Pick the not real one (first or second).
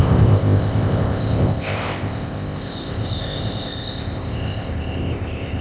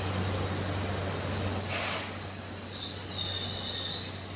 first